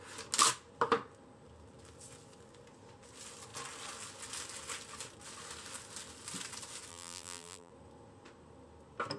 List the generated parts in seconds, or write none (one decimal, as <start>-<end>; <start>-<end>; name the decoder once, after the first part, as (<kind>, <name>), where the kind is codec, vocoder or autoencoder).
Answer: 6.9-7.7 (vocoder, BigVGAN v2)